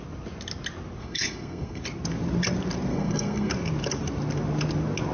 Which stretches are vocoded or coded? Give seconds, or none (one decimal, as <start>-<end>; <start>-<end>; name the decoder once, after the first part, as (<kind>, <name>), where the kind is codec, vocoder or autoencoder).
1.0-1.8 (codec, SNAC); 2.9-3.5